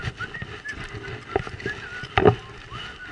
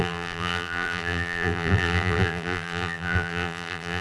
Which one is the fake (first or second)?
second